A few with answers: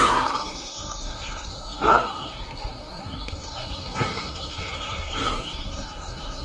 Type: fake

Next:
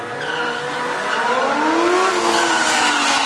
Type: real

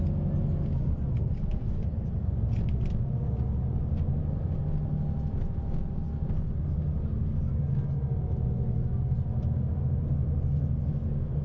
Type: real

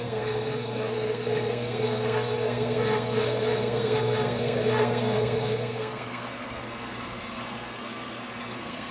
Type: fake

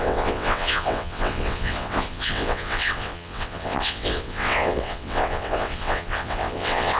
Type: fake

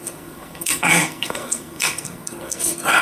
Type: fake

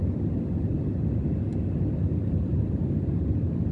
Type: real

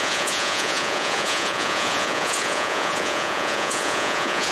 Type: fake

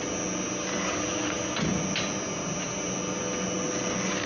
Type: real